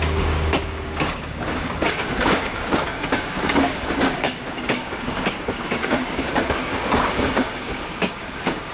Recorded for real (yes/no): no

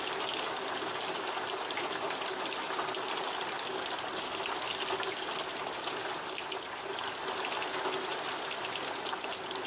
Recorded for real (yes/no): yes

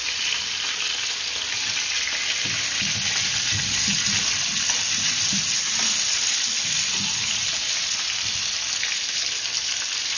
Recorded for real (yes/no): yes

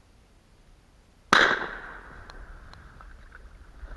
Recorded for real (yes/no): yes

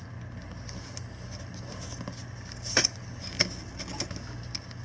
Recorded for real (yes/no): yes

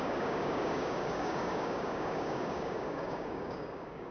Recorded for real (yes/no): no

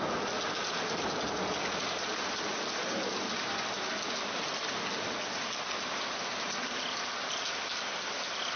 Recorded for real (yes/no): yes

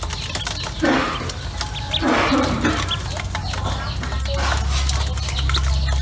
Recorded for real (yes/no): yes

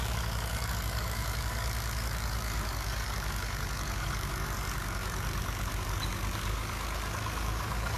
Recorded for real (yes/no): no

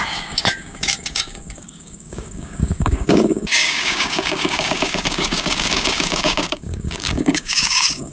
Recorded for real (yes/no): no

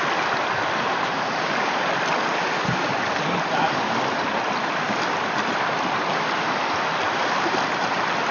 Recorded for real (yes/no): yes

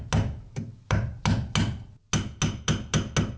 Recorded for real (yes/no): yes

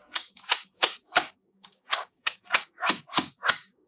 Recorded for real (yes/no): no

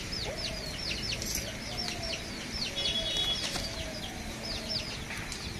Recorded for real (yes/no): yes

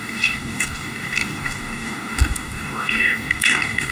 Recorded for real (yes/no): no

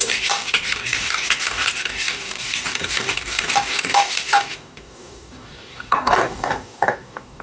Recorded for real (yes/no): no